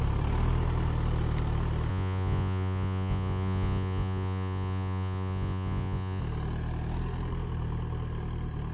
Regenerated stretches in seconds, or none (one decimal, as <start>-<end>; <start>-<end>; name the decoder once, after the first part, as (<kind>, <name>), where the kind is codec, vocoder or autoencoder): 1.9-6.2 (vocoder, Vocos)